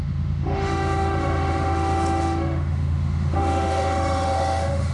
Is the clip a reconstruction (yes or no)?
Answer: yes